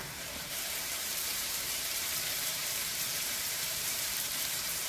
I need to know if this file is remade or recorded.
remade